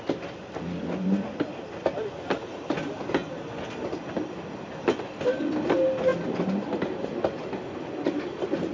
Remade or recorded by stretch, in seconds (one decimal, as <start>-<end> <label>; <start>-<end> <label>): 0.0-8.7 recorded